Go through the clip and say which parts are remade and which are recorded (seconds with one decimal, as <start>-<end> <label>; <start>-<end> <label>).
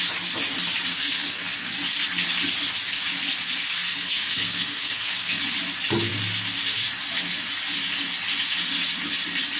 0.0-0.9 recorded; 0.9-1.7 remade; 1.7-3.9 recorded; 3.9-5.4 remade; 5.4-9.6 recorded